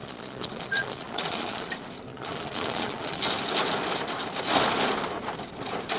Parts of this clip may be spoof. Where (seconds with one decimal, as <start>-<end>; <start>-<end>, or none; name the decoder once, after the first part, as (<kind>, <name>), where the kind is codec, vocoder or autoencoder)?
0.0-1.7 (vocoder, Vocos); 2.1-3.2